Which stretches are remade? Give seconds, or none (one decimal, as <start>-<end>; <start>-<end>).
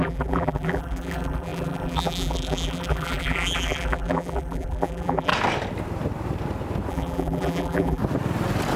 0.0-5.3; 6.9-8.0